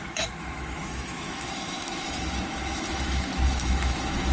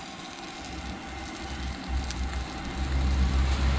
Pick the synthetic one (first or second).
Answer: first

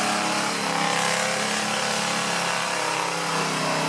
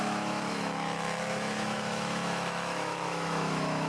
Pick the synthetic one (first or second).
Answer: second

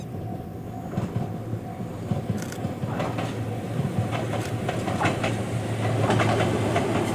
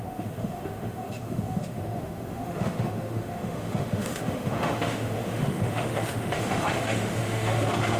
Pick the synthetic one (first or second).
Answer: second